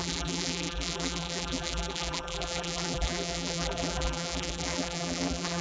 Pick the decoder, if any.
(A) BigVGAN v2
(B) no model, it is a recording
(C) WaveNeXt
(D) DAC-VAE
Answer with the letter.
A